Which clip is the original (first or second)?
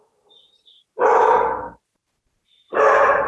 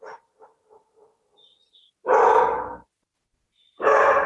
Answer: second